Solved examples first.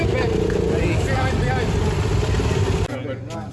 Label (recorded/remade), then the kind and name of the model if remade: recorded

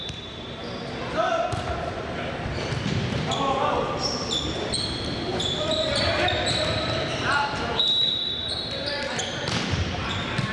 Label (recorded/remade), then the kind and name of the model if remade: remade, vocoder, BigVGAN v2